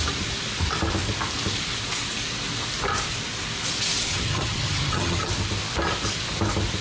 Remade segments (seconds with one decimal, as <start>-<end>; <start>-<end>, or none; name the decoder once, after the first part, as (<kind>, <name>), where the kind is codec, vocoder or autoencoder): 4.1-5.3 (vocoder, HiFi-GAN)